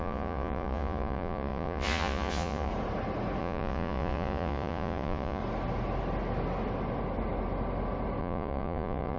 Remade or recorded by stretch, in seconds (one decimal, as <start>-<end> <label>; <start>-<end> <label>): 0.0-2.7 remade; 2.7-3.4 recorded; 3.4-5.4 remade; 5.4-8.2 recorded; 8.2-9.2 remade